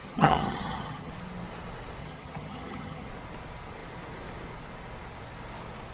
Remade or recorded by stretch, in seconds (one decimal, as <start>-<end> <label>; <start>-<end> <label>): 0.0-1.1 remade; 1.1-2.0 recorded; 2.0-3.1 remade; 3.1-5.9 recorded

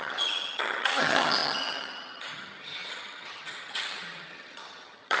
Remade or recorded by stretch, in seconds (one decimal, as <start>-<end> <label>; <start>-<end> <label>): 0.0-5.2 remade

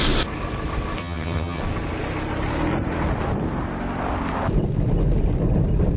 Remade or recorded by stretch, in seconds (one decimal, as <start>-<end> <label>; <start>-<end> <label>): 0.0-1.0 recorded; 1.0-1.6 remade; 1.6-6.0 recorded